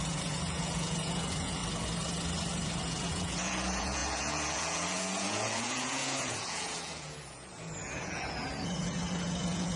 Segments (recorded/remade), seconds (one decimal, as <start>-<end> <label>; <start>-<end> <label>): 0.0-1.6 remade; 1.6-2.8 recorded; 2.8-9.8 remade